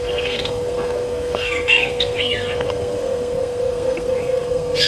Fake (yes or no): yes